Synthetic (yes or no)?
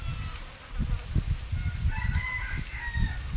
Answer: no